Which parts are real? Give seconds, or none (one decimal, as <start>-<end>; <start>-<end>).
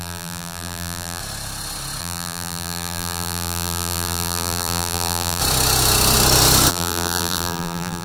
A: 1.2-2.0; 5.4-6.7